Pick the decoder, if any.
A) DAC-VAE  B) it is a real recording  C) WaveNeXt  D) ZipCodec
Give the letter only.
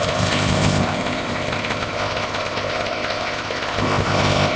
D